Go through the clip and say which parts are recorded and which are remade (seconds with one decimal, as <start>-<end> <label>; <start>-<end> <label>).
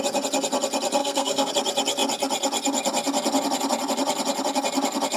0.0-1.0 recorded; 1.0-1.5 remade; 1.5-5.2 recorded